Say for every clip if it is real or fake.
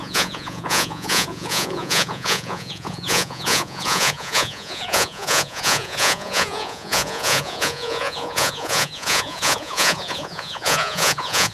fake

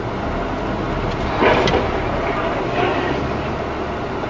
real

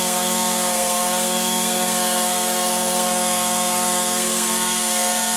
fake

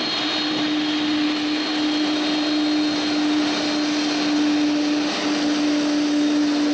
real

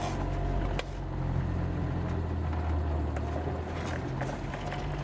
real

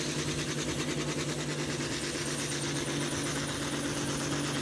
real